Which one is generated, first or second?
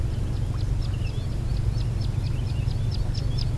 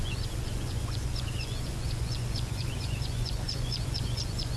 second